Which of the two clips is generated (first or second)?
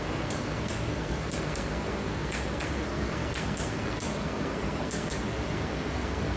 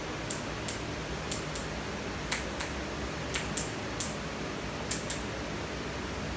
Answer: first